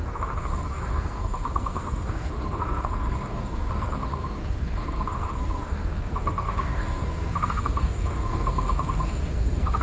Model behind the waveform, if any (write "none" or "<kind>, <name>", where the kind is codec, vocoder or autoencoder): codec, SNAC